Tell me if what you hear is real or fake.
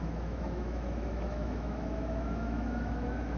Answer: fake